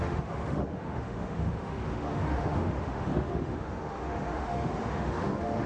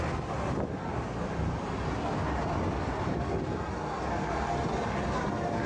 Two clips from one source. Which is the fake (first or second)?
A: first